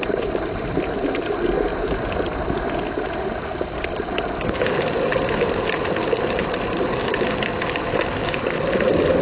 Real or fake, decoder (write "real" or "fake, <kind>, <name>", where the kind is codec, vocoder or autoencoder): real